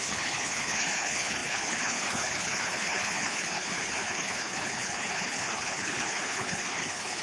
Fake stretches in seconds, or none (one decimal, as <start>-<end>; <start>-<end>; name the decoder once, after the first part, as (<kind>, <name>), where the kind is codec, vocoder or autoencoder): 0.0-7.2 (codec, HILCodec)